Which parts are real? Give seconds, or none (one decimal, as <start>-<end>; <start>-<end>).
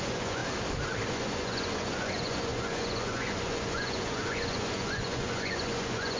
0.4-1.1